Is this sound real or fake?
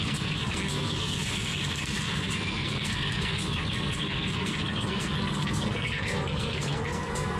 fake